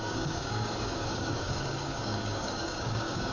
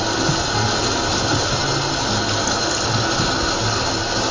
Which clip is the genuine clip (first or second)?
second